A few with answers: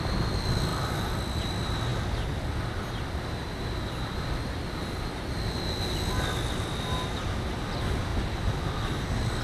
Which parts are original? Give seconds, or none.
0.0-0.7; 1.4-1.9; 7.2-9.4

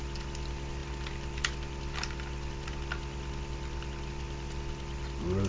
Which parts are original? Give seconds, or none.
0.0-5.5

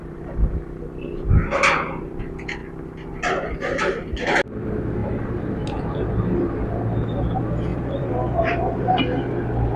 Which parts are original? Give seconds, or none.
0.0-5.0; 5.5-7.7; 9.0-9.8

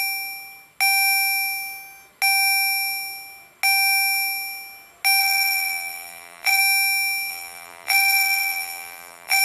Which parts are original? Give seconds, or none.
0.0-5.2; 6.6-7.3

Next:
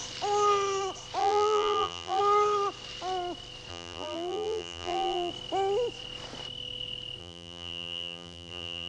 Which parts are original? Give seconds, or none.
0.0-1.2; 2.2-3.7; 5.3-7.2

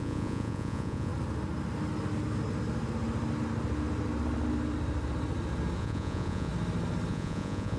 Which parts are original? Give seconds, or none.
1.1-5.8; 6.5-7.1

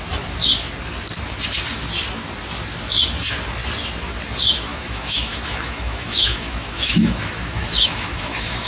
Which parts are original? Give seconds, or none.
0.0-4.7